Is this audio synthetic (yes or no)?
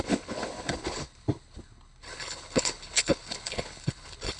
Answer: yes